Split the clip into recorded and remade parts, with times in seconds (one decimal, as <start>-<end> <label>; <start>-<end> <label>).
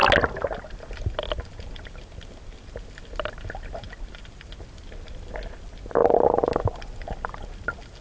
0.0-8.0 recorded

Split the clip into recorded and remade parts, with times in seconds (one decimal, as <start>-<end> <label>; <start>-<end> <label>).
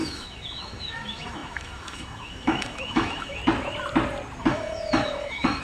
0.0-3.4 remade; 3.4-4.5 recorded; 4.5-5.6 remade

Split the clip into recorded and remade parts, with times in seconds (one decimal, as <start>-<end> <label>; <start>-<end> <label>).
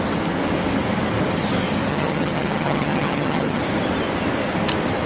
0.0-1.9 recorded; 1.9-3.6 remade; 3.6-5.1 recorded